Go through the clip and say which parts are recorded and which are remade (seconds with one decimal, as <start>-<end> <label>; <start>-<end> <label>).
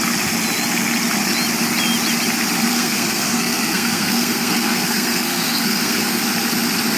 0.0-2.7 recorded; 2.7-6.2 remade; 6.2-7.0 recorded